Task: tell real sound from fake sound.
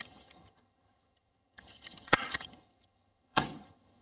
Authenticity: fake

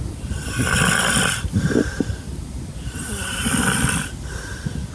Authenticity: real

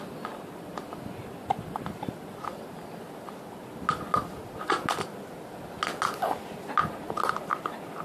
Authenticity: real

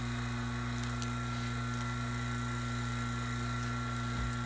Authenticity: real